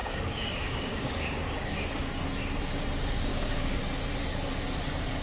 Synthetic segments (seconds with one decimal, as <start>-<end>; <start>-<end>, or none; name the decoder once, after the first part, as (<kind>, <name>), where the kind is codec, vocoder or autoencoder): 0.0-2.2 (codec, DAC); 3.3-3.8